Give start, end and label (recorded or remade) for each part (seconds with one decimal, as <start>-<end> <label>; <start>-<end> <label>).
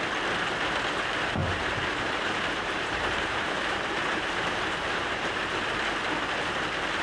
0.0-1.4 recorded; 1.4-5.6 remade; 5.6-7.0 recorded